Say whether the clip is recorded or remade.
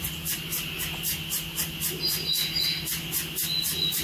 recorded